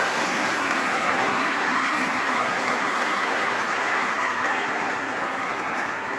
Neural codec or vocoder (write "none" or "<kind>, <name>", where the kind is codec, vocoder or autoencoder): codec, SNAC